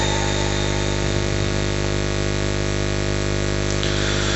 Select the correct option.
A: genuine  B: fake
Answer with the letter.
A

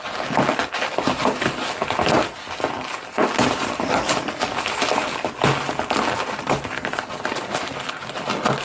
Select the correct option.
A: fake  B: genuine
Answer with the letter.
B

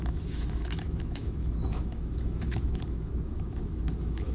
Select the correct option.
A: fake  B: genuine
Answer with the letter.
A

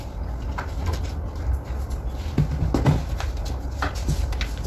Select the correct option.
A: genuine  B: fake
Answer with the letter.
A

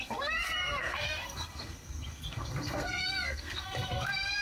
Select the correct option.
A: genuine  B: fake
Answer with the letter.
B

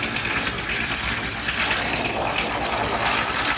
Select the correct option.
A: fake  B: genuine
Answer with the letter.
B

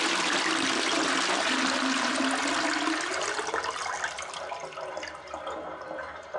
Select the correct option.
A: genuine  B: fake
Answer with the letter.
A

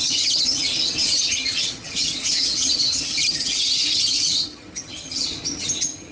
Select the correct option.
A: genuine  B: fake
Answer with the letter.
B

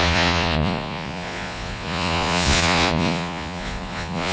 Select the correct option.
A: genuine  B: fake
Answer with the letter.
B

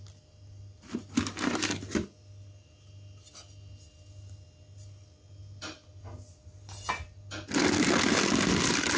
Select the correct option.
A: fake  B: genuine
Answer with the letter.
B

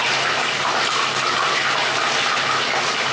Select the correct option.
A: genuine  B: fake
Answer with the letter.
A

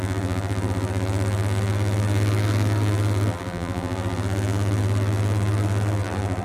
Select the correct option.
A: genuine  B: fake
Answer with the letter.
B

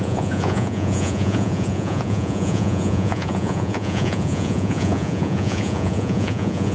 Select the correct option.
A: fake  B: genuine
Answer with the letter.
A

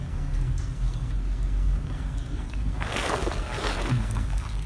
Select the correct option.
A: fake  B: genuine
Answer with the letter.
A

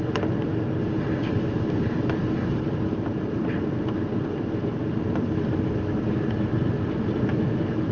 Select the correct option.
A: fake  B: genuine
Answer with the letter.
B